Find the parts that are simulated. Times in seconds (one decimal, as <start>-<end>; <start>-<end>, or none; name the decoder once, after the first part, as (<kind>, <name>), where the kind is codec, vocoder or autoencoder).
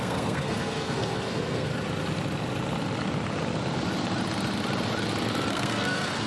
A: 0.0-1.7 (codec, SNAC); 5.5-6.3